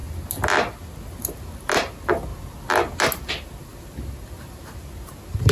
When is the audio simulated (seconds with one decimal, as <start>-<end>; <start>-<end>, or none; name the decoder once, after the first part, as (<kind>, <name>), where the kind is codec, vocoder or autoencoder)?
none